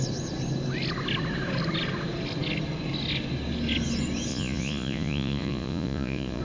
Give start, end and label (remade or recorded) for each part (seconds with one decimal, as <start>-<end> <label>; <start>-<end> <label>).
0.0-4.3 recorded; 4.3-6.4 remade